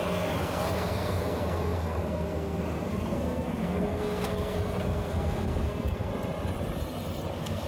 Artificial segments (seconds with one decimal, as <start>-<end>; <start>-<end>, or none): 0.0-6.1; 7.3-7.7